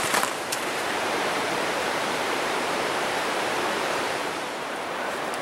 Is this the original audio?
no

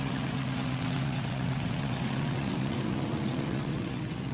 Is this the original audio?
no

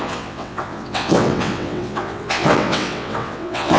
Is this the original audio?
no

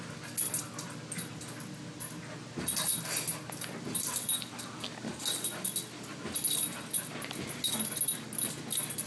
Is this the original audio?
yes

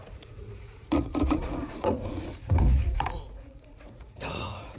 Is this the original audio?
no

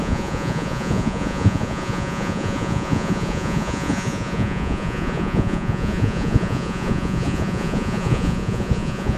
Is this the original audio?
no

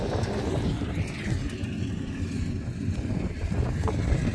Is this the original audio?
yes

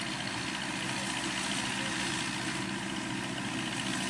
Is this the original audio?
yes